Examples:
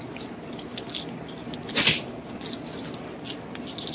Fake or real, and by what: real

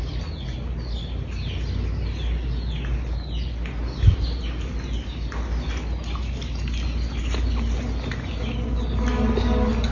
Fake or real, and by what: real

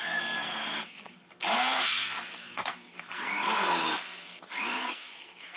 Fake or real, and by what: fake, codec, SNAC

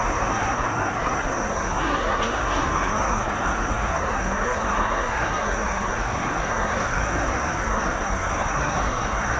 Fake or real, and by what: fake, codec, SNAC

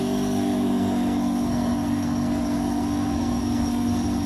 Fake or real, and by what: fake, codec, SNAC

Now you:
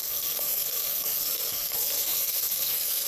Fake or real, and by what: fake, codec, SNAC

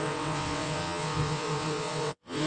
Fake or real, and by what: fake, vocoder, WaveNeXt